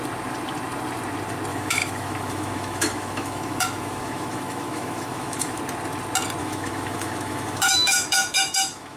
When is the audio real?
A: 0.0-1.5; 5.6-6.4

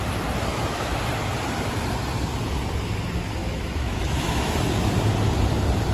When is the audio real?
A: 0.0-0.5; 1.0-3.4; 4.5-5.9